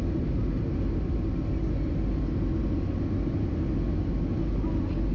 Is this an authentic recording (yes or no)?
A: yes